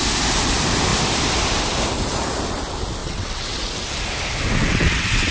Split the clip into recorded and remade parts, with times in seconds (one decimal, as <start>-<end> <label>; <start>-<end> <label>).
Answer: 0.0-3.0 recorded; 3.0-3.6 remade; 3.6-4.6 recorded; 4.6-5.3 remade